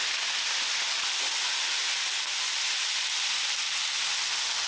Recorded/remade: recorded